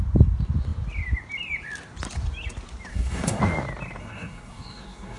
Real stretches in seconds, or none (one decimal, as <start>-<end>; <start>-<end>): 0.0-2.9; 3.4-4.0